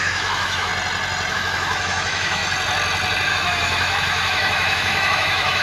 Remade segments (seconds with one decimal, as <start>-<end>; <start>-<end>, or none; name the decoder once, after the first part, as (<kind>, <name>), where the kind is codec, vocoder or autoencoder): 0.0-0.7 (autoencoder, DAC-VAE); 1.3-2.4; 3.3-5.6